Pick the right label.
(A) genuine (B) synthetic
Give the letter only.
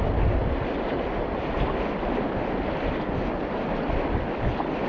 A